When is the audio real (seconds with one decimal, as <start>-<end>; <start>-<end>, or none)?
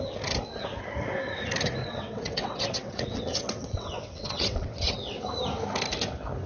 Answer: 0.0-1.8; 5.2-6.5